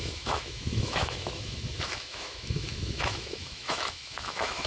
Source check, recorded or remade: remade